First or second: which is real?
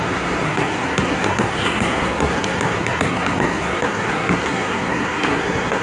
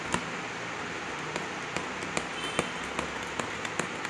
second